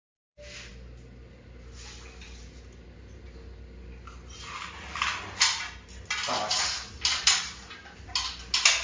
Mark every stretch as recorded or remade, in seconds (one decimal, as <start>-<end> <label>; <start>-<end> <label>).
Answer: 0.0-6.5 recorded; 6.5-7.4 remade; 7.4-8.8 recorded